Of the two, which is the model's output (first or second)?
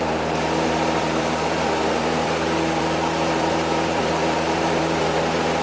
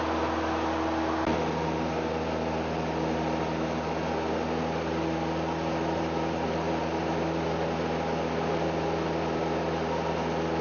first